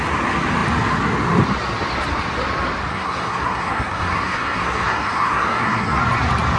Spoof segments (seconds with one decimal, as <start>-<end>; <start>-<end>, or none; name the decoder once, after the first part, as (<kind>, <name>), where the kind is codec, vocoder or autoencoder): 2.9-6.0 (codec, SNAC)